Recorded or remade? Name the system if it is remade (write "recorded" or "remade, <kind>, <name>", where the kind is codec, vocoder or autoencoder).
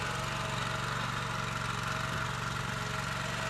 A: recorded